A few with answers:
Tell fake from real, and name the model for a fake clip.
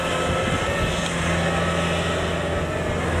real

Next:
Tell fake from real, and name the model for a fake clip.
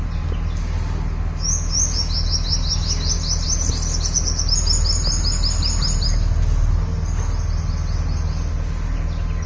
real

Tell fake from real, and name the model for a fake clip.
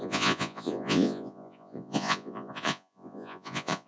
fake, vocoder, Vocos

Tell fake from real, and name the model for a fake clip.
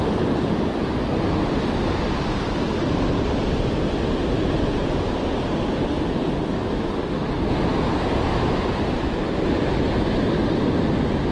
real